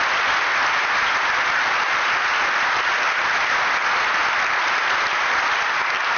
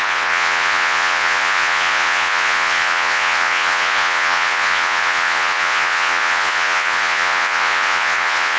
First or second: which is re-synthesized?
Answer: second